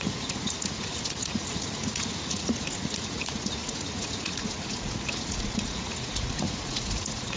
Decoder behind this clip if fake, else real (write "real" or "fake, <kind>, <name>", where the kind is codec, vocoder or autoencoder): fake, vocoder, Vocos